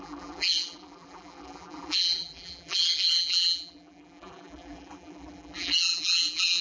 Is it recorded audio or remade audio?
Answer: remade